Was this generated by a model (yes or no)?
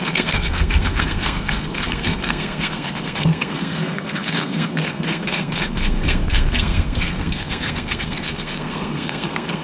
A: yes